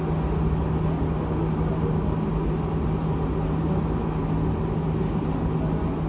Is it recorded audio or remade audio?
recorded